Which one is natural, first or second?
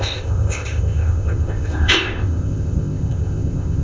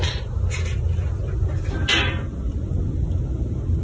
second